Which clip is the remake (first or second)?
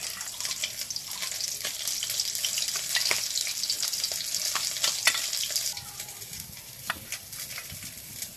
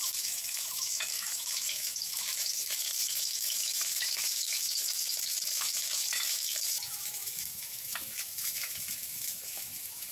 second